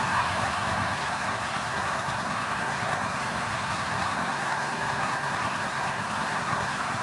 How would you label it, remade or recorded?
remade